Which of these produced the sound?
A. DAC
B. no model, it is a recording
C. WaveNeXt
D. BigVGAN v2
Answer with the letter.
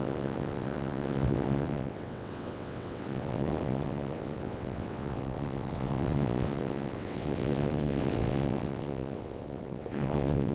C